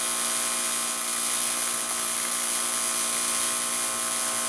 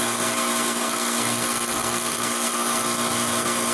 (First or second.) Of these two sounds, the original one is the first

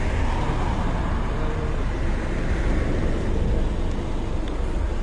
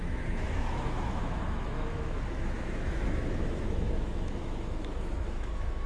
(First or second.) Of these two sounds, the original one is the first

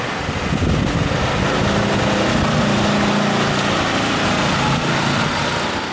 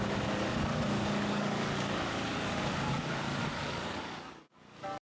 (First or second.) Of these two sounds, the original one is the first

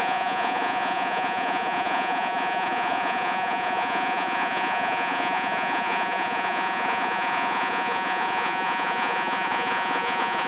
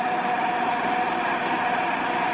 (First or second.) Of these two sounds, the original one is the second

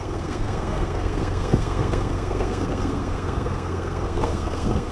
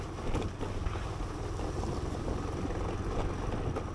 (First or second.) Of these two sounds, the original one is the second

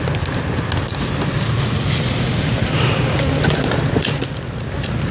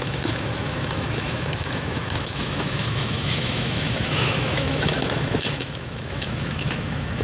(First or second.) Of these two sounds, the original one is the first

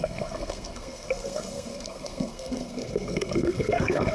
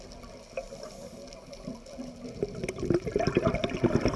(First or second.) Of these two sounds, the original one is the second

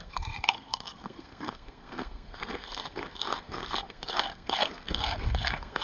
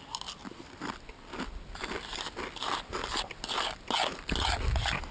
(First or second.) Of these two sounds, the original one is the second